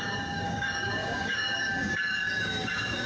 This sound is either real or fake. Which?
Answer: fake